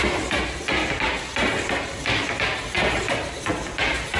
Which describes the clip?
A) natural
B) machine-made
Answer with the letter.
A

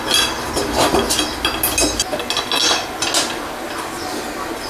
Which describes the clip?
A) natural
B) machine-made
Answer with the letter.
A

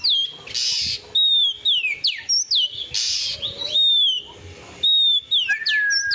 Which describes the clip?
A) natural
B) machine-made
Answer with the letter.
A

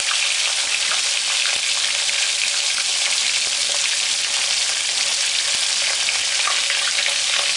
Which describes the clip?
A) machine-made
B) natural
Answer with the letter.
B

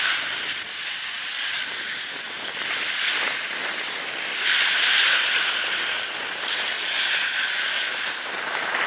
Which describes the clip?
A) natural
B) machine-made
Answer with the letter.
A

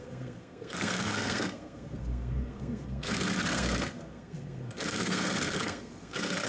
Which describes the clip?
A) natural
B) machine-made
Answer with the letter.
B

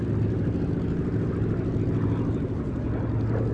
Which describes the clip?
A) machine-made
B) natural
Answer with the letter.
B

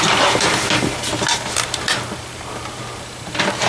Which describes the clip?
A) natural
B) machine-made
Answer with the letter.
A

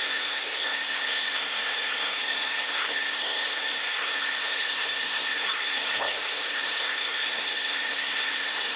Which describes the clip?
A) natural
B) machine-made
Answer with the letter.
B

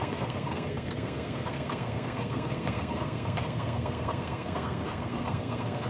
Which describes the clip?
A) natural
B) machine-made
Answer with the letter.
B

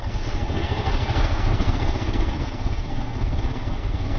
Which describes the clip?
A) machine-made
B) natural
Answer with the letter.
A